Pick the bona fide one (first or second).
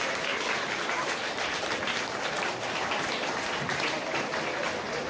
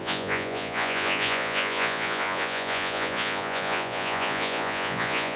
first